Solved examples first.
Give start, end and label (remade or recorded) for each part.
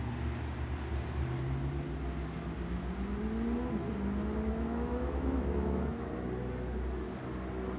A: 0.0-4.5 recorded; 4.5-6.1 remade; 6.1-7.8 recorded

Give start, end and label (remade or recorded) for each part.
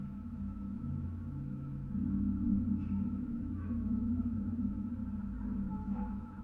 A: 0.0-5.0 remade; 5.0-5.7 recorded; 5.7-6.4 remade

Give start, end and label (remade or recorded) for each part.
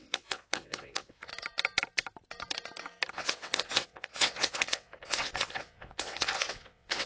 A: 0.0-1.3 remade; 1.3-3.1 recorded; 3.1-7.1 remade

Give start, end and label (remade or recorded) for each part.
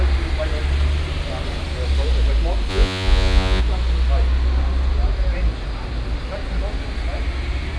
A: 0.0-2.7 recorded; 2.7-3.6 remade; 3.6-7.8 recorded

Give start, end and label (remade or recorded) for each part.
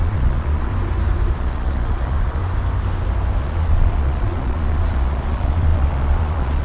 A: 0.0-0.7 remade; 0.7-1.3 recorded; 1.3-2.4 remade; 2.4-3.4 recorded; 3.4-6.6 remade